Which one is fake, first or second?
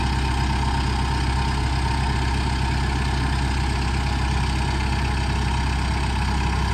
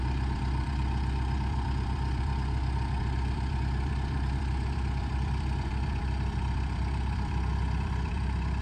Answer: second